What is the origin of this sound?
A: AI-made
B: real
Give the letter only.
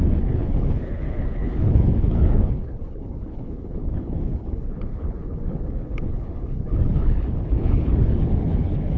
A